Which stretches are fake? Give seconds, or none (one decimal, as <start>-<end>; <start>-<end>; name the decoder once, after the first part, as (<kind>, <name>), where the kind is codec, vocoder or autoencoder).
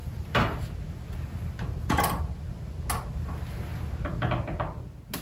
none